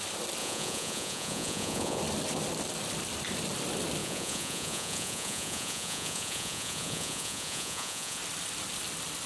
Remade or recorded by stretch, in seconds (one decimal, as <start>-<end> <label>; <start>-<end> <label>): 0.0-0.4 recorded; 0.4-2.0 remade; 2.0-4.0 recorded; 4.0-8.2 remade; 8.2-9.3 recorded